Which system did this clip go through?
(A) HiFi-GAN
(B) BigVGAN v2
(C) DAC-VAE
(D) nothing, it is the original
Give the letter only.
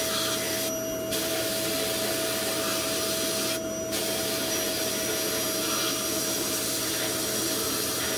D